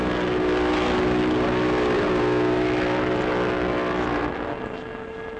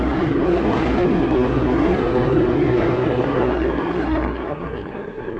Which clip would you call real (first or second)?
first